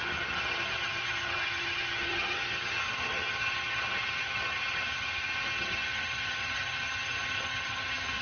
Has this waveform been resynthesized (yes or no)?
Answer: yes